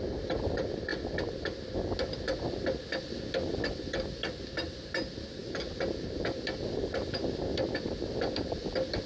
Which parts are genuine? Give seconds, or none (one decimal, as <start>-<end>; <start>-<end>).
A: 0.0-9.1